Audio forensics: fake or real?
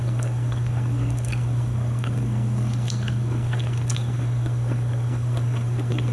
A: fake